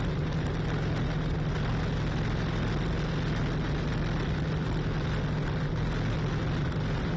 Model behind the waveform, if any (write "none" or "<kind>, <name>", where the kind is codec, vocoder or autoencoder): none